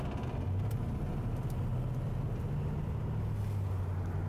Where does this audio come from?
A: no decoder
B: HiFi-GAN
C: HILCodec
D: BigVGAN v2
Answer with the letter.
A